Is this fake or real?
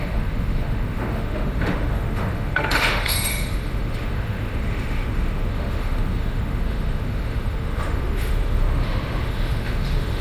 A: fake